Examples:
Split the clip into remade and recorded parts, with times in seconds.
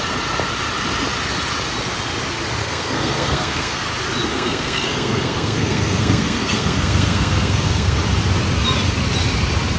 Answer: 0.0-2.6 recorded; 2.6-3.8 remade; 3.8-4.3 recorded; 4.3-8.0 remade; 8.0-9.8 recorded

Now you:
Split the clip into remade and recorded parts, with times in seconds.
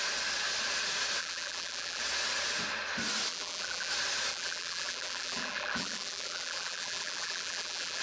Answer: 0.0-1.2 recorded; 1.2-2.0 remade; 2.0-3.3 recorded; 3.3-3.9 remade; 3.9-4.3 recorded; 4.3-8.0 remade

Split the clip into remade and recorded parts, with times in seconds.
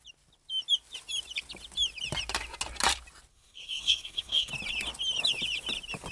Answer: 0.0-3.3 recorded; 3.3-4.5 remade; 4.5-6.1 recorded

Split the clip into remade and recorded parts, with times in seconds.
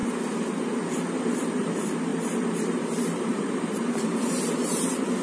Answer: 0.0-1.2 recorded; 1.2-5.2 remade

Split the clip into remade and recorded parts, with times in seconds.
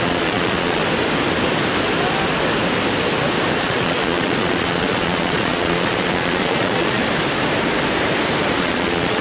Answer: 0.0-0.8 remade; 0.8-3.6 recorded; 3.6-7.0 remade; 7.0-8.6 recorded; 8.6-9.2 remade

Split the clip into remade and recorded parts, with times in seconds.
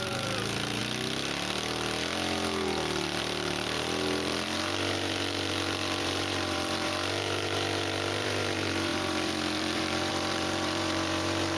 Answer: 0.0-0.8 remade; 0.8-3.2 recorded; 3.2-11.6 remade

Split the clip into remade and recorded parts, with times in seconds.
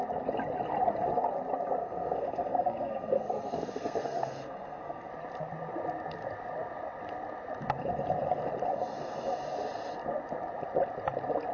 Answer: 0.0-1.8 recorded; 1.8-5.1 remade; 5.1-11.5 recorded